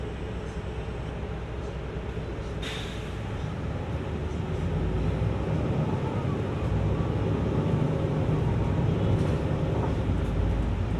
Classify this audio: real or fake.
real